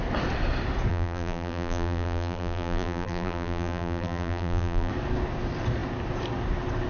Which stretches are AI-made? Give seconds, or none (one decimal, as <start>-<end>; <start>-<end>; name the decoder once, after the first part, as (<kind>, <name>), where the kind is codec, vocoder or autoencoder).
0.9-4.9 (vocoder, BigVGAN v2)